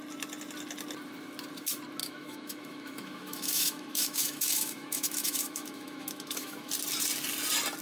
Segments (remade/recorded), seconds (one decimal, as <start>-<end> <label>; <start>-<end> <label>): 0.0-2.0 recorded; 2.0-6.7 remade; 6.7-7.8 recorded